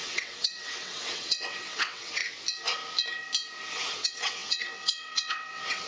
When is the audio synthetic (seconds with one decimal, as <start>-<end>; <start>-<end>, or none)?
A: 0.0-2.2; 3.7-5.9

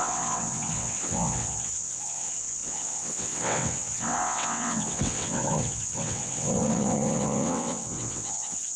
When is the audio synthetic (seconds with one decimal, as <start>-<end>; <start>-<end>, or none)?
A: 0.0-8.8